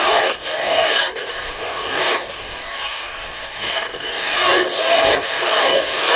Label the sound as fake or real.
fake